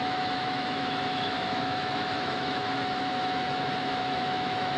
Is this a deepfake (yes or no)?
yes